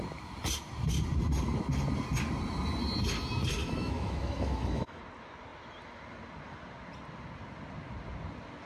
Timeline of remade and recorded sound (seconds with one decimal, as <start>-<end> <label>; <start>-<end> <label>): 0.0-3.6 recorded; 3.6-5.0 remade; 5.0-8.7 recorded